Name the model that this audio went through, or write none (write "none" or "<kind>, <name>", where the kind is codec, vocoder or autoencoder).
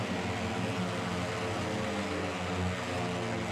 none